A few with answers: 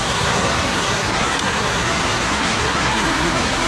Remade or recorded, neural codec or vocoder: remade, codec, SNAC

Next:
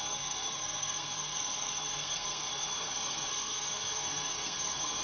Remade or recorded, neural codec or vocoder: remade, codec, SNAC